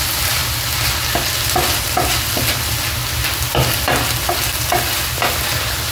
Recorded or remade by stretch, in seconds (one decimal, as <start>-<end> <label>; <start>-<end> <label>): 0.0-5.9 recorded